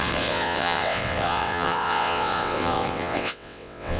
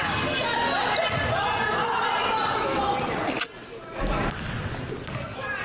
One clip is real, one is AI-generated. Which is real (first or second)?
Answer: second